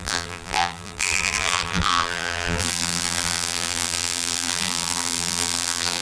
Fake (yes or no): yes